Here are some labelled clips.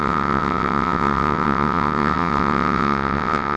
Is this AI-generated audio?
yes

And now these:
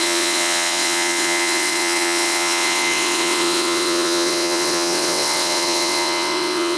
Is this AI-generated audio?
yes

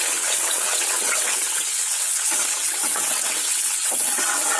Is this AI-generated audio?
yes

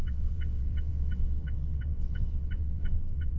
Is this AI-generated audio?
yes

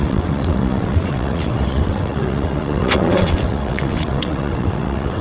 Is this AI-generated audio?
yes